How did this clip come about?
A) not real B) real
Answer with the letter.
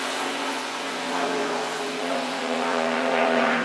A